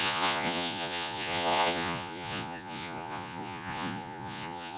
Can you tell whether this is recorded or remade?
remade